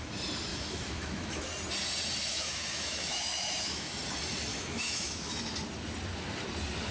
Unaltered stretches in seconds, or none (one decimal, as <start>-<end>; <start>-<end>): 0.0-0.5; 1.5-2.3; 4.0-4.5; 5.4-6.9